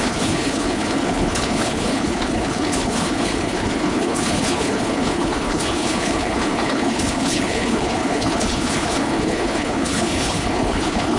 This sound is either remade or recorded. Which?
remade